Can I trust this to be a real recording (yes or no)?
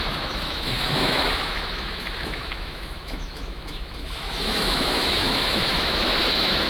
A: no